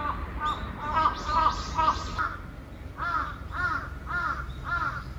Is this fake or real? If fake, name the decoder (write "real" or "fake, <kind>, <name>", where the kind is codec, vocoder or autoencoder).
real